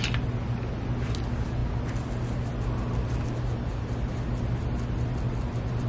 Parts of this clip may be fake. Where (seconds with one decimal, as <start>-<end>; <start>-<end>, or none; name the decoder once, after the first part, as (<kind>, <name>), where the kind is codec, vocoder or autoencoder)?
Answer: none